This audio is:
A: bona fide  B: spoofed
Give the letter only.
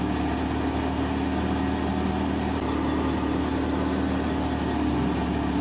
A